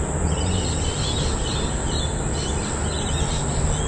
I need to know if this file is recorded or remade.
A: recorded